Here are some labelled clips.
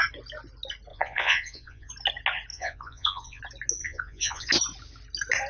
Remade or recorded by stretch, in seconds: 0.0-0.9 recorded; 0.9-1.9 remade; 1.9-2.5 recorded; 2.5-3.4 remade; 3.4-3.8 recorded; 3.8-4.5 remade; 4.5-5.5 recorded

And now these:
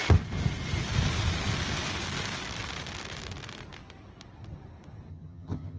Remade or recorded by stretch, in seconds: 0.0-5.1 recorded; 5.1-5.8 remade

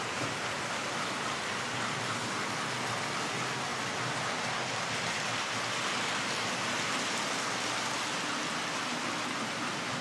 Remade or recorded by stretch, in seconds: 0.0-10.0 recorded

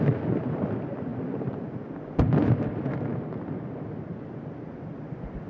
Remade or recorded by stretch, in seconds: 0.0-5.5 recorded

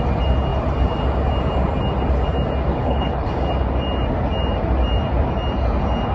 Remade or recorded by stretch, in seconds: 0.0-2.7 recorded; 2.7-3.3 remade; 3.3-6.1 recorded

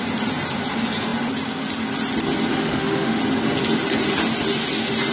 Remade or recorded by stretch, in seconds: 0.0-2.5 recorded; 2.5-3.2 remade; 3.2-5.1 recorded